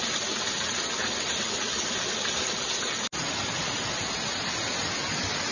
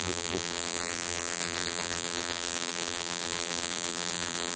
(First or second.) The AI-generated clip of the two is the second